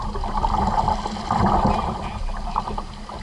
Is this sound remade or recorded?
recorded